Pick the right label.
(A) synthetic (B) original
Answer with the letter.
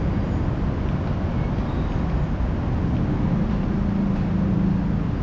B